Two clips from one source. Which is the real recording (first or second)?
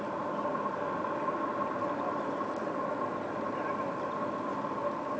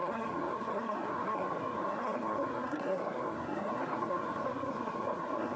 first